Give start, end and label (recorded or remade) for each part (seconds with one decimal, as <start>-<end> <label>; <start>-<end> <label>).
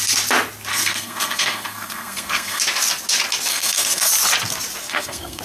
0.0-0.7 recorded; 0.7-2.6 remade; 2.6-3.5 recorded; 3.5-4.1 remade; 4.1-4.8 recorded; 4.8-5.4 remade